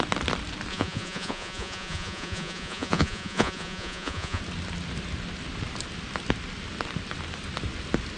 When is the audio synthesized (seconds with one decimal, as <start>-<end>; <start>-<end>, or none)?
0.7-4.4